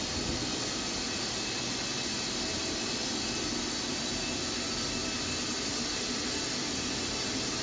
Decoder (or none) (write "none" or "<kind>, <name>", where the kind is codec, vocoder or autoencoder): none